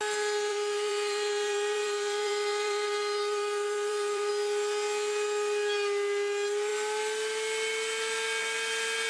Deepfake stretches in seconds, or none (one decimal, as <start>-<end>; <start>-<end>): 0.5-4.3